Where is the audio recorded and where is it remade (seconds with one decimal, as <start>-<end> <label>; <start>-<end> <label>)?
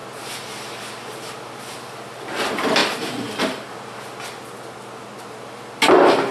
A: 0.0-2.8 recorded; 2.8-3.7 remade; 3.7-6.3 recorded